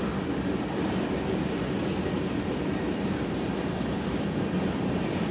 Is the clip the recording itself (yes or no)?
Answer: yes